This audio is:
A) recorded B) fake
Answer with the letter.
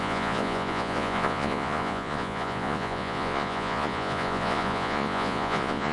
B